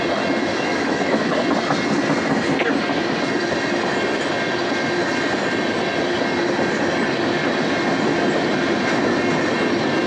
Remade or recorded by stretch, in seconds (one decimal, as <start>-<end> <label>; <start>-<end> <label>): 0.0-0.5 recorded; 0.5-1.3 remade; 1.3-10.1 recorded